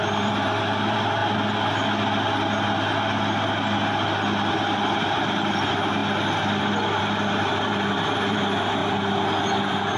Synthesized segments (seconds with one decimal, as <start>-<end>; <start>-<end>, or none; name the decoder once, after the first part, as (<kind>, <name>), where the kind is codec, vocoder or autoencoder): 0.0-1.2 (vocoder, BigVGAN v2); 4.5-6.0; 7.0-8.8; 9.5-10.0